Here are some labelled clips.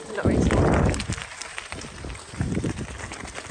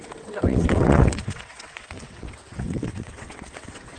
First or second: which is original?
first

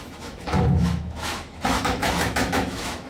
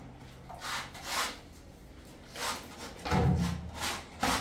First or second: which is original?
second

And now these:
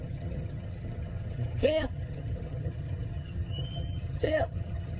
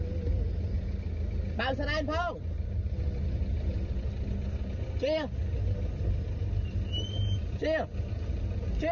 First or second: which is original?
second